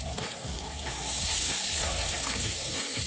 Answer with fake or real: fake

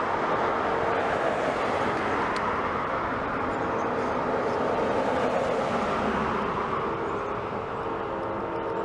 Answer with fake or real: real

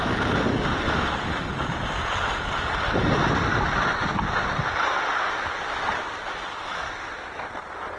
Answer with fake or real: real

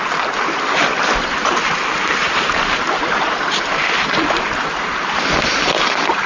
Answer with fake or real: real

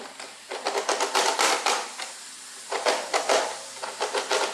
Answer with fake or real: fake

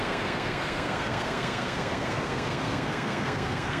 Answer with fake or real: fake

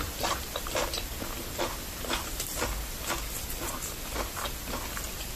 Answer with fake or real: real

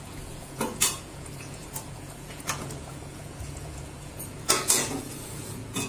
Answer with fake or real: fake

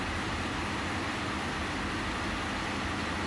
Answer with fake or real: real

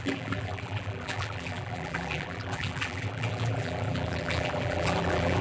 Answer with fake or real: fake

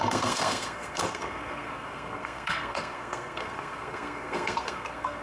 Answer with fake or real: fake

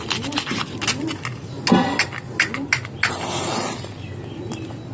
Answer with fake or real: real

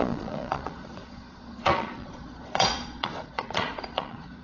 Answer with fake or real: fake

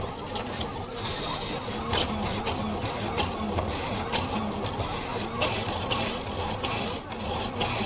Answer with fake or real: real